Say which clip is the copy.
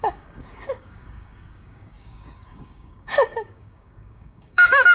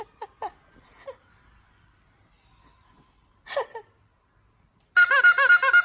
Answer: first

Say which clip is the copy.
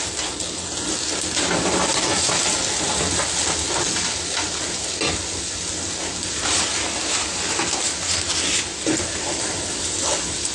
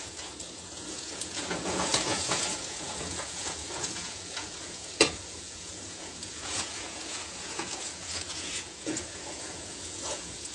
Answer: second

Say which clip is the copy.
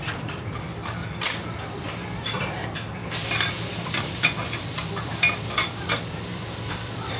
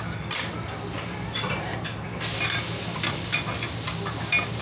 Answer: first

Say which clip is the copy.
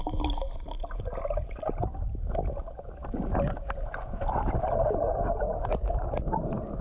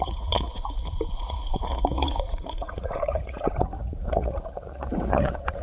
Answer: second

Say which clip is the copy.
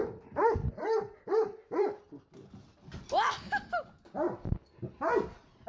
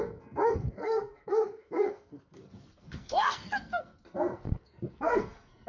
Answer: second